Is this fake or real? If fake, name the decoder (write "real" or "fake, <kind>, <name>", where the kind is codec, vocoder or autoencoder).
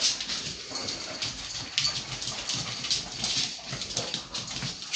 real